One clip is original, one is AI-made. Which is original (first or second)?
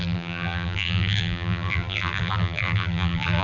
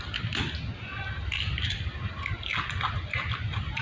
second